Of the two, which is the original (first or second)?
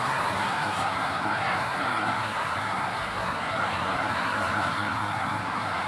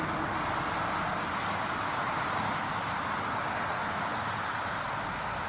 second